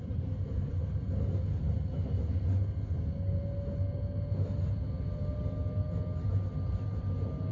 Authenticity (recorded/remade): recorded